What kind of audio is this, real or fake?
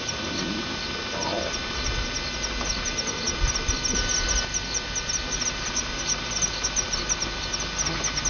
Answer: real